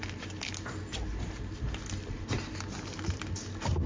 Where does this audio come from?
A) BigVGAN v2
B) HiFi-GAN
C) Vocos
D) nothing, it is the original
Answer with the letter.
D